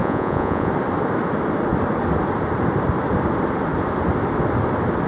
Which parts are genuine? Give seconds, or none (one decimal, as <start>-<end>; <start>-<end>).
0.7-5.1